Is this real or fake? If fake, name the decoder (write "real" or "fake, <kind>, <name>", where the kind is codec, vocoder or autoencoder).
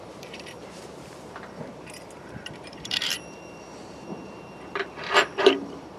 fake, vocoder, BigVGAN v2